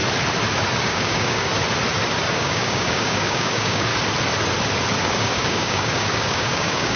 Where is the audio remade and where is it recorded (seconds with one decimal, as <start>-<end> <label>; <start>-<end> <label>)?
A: 0.0-0.8 recorded; 0.8-1.5 remade; 1.5-2.3 recorded; 2.3-3.9 remade; 3.9-5.0 recorded; 5.0-7.0 remade